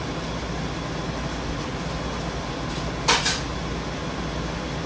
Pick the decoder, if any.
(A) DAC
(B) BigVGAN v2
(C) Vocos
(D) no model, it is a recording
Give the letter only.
D